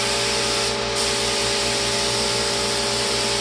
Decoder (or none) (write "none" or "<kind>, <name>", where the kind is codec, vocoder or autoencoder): none